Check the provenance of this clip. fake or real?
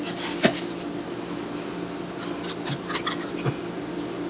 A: real